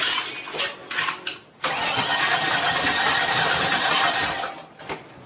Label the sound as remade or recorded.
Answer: recorded